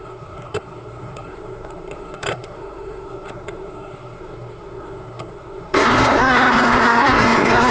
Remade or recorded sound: remade